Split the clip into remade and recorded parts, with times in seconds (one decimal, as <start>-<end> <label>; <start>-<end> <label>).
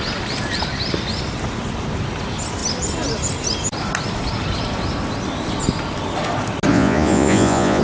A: 0.0-6.7 recorded; 6.7-7.8 remade